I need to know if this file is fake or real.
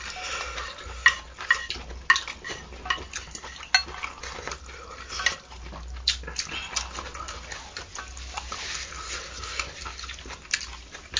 real